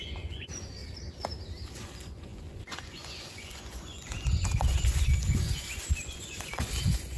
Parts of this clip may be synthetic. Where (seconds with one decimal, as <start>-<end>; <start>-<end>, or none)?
0.0-0.8; 1.7-7.2